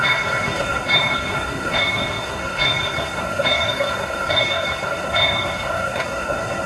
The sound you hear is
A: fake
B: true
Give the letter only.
A